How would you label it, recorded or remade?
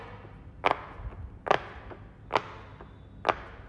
recorded